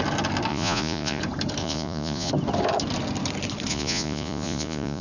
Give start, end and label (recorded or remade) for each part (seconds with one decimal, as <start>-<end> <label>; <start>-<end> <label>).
0.0-0.5 recorded; 0.5-1.2 remade; 1.2-1.6 recorded; 1.6-2.3 remade; 2.3-3.7 recorded; 3.7-5.0 remade